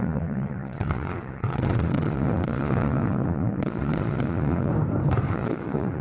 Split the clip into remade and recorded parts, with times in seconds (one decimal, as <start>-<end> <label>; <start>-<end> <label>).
0.0-4.7 remade; 4.7-5.3 recorded; 5.3-6.0 remade